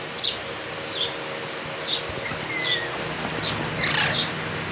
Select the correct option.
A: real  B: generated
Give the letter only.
A